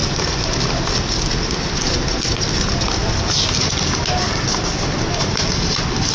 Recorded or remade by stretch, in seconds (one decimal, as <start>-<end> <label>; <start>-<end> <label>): 0.0-6.1 recorded